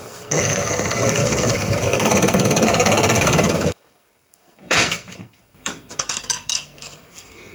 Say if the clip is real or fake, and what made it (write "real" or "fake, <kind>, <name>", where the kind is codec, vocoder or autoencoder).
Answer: fake, codec, SNAC